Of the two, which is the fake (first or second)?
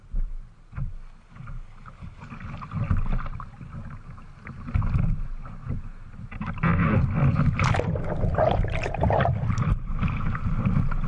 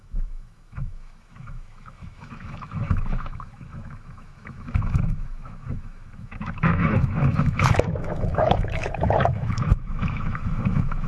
second